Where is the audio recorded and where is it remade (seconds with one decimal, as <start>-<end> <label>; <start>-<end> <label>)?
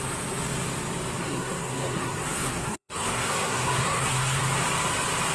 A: 0.0-1.2 recorded; 1.2-4.4 remade; 4.4-5.3 recorded